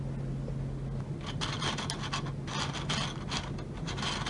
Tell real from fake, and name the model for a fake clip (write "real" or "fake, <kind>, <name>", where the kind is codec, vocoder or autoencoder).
real